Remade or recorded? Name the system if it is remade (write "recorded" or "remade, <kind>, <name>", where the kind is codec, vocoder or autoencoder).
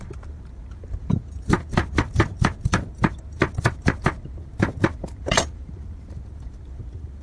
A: remade, vocoder, BigVGAN v2